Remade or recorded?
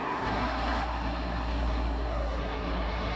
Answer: remade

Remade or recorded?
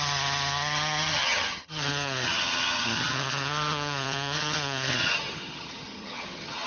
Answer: remade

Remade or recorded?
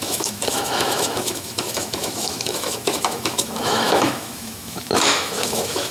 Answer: remade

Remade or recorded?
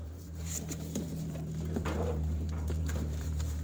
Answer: remade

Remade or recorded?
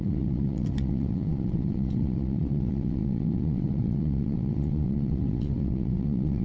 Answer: remade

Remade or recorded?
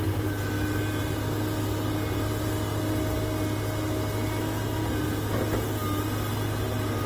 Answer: recorded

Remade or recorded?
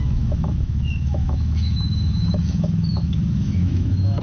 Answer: remade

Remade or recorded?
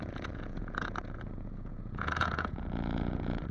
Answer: remade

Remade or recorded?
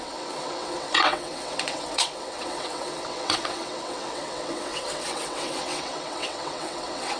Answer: remade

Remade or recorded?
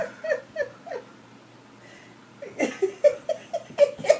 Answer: recorded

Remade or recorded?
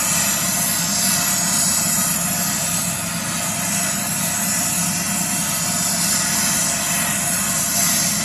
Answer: recorded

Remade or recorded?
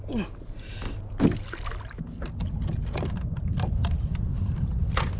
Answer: recorded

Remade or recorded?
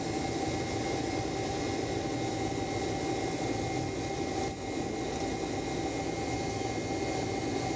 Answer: recorded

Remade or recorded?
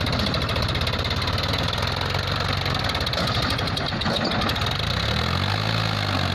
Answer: recorded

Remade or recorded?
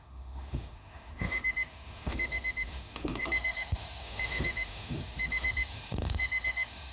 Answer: remade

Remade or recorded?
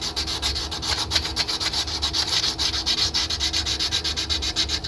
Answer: recorded